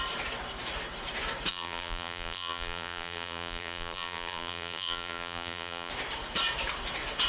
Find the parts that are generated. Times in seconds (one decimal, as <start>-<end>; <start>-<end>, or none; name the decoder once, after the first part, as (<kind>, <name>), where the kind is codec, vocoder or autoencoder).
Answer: 1.5-5.9 (vocoder, BigVGAN v2)